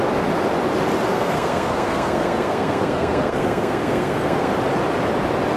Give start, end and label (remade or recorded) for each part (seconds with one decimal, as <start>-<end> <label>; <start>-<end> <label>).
0.0-1.1 recorded; 1.1-4.5 remade; 4.5-5.6 recorded